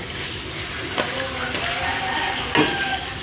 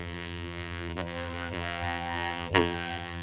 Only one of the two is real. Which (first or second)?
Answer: first